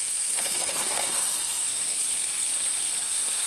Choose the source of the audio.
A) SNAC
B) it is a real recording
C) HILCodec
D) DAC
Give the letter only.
A